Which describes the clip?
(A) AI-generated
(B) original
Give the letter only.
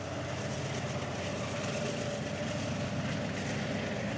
B